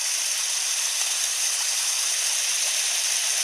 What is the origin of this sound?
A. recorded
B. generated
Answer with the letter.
A